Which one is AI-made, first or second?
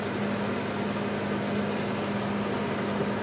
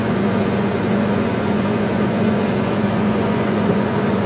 second